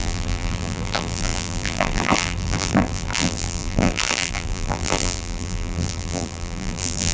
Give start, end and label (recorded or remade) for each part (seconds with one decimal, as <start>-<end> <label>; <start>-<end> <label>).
0.0-7.1 remade